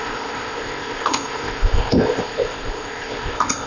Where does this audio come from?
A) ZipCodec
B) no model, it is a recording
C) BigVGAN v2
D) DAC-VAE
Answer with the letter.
A